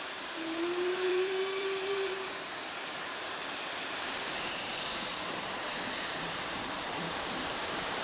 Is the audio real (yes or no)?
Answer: no